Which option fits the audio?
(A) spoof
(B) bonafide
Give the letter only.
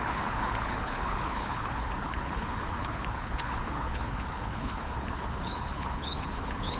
A